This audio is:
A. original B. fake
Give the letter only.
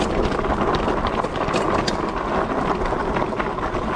A